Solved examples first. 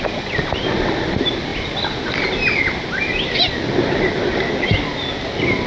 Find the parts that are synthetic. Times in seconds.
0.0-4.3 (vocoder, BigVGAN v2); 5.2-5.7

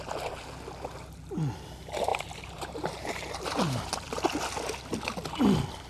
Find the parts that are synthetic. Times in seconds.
2.1-3.8 (vocoder, BigVGAN v2)

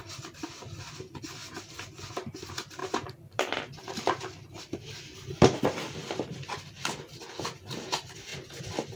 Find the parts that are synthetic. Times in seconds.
2.8-6.3 (vocoder, BigVGAN v2)

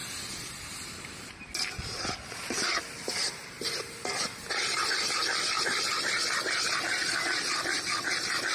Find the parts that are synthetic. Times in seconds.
none